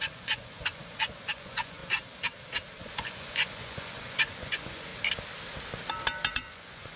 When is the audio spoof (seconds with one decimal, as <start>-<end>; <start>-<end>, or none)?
0.0-1.8; 2.8-4.9; 6.3-7.0